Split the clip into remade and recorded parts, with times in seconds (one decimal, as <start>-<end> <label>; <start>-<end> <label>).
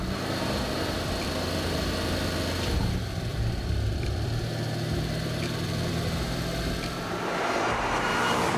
0.0-3.3 recorded; 3.3-4.5 remade; 4.5-8.6 recorded